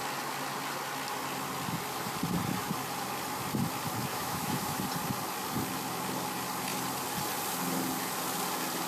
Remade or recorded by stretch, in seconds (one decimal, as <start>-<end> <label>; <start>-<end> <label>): 0.0-4.1 recorded; 4.1-4.8 remade; 4.8-8.9 recorded